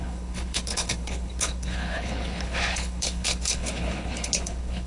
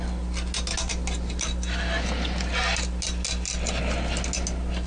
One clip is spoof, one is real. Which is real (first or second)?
second